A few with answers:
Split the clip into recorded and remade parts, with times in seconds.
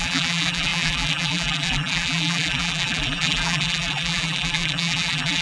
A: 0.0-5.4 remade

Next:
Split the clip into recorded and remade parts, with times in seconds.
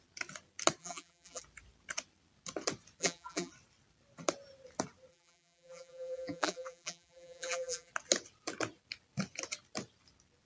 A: 0.0-0.8 recorded; 0.8-1.4 remade; 1.4-3.0 recorded; 3.0-3.5 remade; 3.5-5.1 recorded; 5.1-7.9 remade; 7.9-10.5 recorded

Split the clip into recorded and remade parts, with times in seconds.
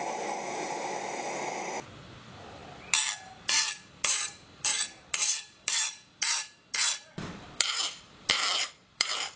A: 0.0-2.6 remade; 2.6-3.6 recorded; 3.6-9.4 remade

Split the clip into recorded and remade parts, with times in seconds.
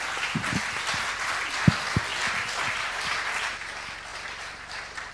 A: 0.0-4.1 recorded; 4.1-5.1 remade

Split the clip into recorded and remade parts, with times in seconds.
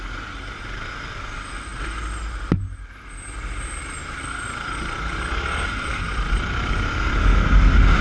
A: 0.0-8.0 recorded